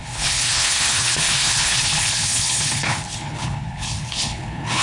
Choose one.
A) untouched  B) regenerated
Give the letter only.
B